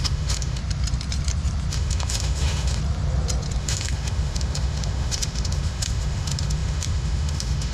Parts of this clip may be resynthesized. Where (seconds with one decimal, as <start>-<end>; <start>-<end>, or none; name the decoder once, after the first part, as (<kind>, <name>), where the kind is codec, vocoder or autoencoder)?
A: 0.0-0.6 (autoencoder, DAC-VAE); 1.7-2.8; 3.6-7.7